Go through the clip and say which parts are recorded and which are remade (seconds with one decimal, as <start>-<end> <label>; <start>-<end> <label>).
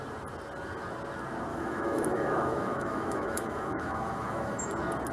0.0-1.5 recorded; 1.5-4.6 remade; 4.6-5.1 recorded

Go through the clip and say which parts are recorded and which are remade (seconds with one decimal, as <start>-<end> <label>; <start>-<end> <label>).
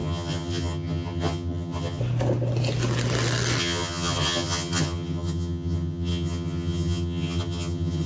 0.0-2.0 remade; 2.0-3.6 recorded; 3.6-8.1 remade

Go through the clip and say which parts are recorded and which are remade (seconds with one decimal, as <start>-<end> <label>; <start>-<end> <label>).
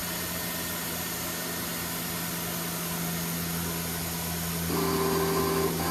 0.0-5.9 recorded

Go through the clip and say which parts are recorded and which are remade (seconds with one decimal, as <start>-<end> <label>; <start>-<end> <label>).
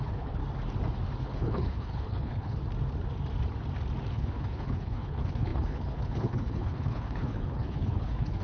0.0-0.4 remade; 0.4-1.2 recorded; 1.2-2.6 remade; 2.6-4.1 recorded; 4.1-8.4 remade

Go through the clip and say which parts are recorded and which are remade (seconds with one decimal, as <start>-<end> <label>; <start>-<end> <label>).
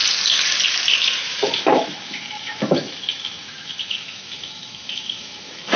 0.0-1.2 recorded; 1.2-5.8 remade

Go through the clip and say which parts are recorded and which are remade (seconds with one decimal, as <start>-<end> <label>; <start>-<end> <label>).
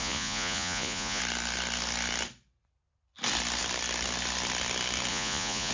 0.0-1.2 remade; 1.2-5.1 recorded; 5.1-5.7 remade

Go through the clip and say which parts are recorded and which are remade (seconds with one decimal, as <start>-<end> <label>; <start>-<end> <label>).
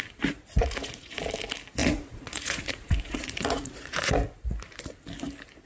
0.0-0.6 recorded; 0.6-1.2 remade; 1.2-1.8 recorded; 1.8-4.1 remade; 4.1-5.7 recorded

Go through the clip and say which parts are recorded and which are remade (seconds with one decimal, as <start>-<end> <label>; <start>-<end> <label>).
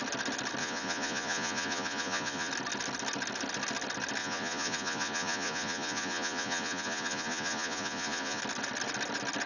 0.0-0.6 recorded; 0.6-2.5 remade; 2.5-4.2 recorded; 4.2-8.4 remade; 8.4-9.5 recorded